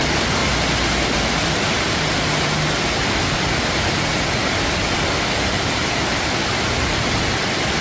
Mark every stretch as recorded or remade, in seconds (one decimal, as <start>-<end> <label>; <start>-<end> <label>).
0.0-0.4 remade; 0.4-3.6 recorded; 3.6-7.8 remade